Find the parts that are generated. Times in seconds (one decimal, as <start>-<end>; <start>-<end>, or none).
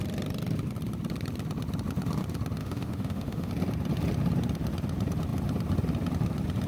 2.6-3.5